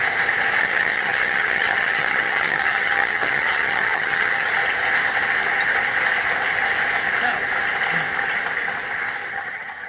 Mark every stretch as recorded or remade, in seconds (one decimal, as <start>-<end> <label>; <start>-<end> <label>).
0.0-0.6 recorded; 0.6-4.5 remade; 4.5-9.3 recorded; 9.3-9.9 remade